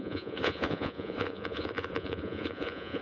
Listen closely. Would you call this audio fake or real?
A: fake